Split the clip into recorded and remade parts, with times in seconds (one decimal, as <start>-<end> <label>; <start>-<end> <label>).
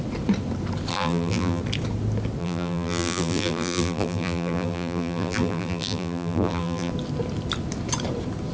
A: 0.0-0.9 recorded; 0.9-1.6 remade; 1.6-2.4 recorded; 2.4-6.9 remade; 6.9-8.5 recorded